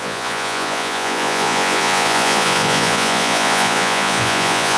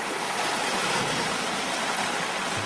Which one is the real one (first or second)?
second